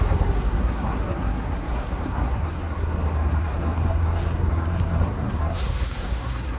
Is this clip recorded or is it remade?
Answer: remade